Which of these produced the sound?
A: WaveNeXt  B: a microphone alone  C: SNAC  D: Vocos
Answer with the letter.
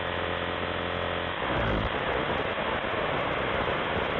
B